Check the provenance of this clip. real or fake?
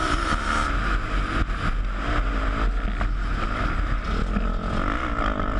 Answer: real